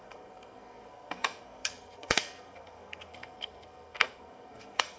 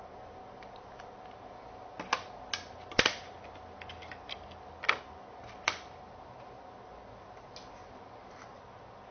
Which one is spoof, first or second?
first